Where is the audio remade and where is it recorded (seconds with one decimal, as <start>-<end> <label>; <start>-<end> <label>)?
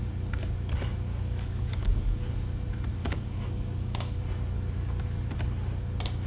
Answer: 0.0-1.1 recorded; 1.1-2.3 remade; 2.3-3.0 recorded; 3.0-4.2 remade; 4.2-6.3 recorded